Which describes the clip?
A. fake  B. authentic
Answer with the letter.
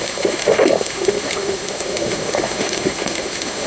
A